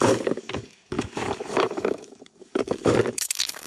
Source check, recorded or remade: remade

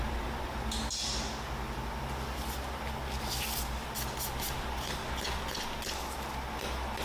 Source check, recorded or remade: recorded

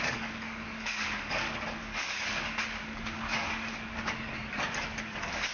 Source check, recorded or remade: remade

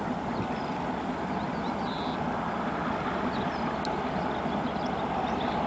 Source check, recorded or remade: recorded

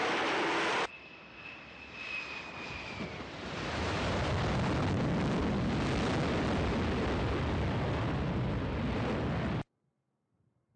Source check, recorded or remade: recorded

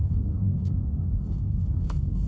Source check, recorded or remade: remade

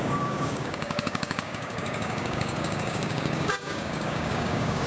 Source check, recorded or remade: remade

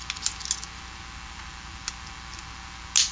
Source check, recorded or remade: recorded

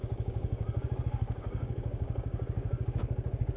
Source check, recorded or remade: remade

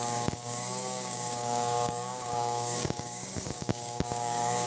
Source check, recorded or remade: remade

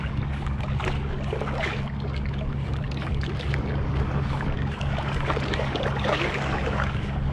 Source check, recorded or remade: remade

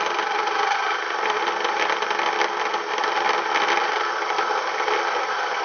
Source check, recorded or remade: recorded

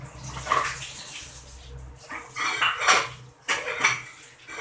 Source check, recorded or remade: recorded